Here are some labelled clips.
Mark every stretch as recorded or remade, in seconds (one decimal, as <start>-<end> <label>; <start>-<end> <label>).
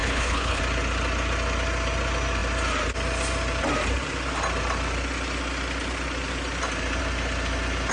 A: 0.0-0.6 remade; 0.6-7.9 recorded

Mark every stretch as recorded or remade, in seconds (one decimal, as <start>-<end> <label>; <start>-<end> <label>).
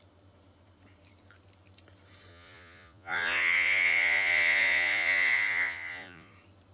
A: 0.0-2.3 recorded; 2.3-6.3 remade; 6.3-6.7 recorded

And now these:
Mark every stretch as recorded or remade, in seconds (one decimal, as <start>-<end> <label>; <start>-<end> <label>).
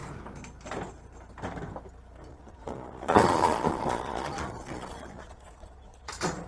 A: 0.0-2.3 recorded; 2.3-6.1 remade; 6.1-6.5 recorded